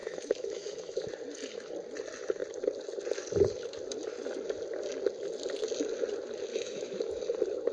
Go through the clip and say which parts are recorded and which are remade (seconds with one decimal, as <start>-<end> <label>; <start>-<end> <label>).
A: 0.0-1.1 remade; 1.1-6.5 recorded; 6.5-7.2 remade; 7.2-7.7 recorded